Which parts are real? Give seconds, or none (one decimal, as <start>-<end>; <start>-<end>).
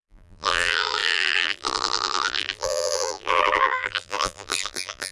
none